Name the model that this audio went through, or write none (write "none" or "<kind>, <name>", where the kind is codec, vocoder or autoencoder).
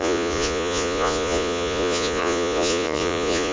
vocoder, Vocos